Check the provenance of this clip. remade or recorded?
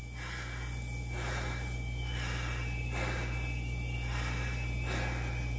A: recorded